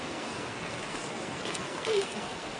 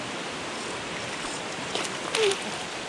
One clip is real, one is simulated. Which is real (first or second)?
second